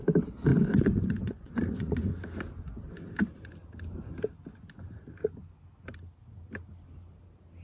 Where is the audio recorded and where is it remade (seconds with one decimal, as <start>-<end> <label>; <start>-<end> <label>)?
0.0-0.5 recorded; 0.5-2.1 remade; 2.1-7.6 recorded